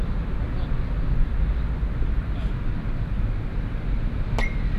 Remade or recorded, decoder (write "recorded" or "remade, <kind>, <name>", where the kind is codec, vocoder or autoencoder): recorded